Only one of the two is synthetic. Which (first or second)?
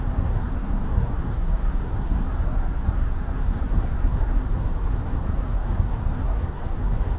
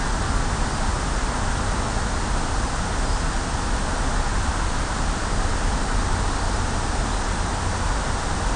first